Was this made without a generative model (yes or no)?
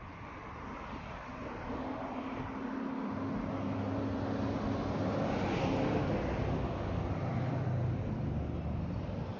yes